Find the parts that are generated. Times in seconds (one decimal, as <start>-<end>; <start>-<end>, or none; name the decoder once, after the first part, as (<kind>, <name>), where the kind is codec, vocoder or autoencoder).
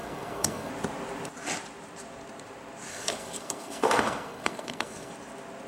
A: 0.0-0.7 (codec, SNAC); 2.9-5.1